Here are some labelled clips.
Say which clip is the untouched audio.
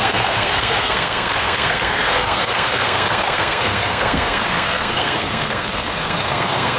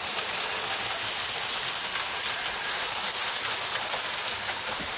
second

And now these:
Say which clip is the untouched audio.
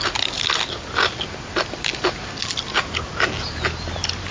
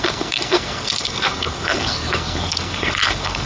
first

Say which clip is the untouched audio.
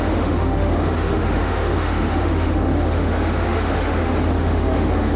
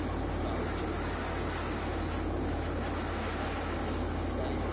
second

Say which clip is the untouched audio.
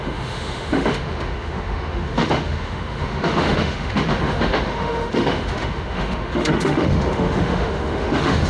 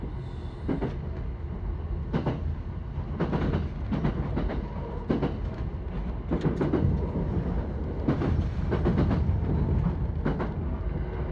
second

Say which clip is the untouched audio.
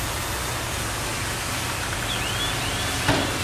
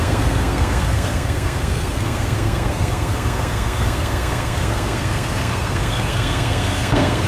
first